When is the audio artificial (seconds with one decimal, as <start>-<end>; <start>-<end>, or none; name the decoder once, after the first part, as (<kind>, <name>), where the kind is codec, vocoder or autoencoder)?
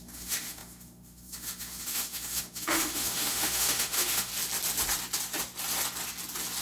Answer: 0.0-4.3 (autoencoder, DAC-VAE)